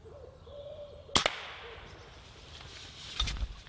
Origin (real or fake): real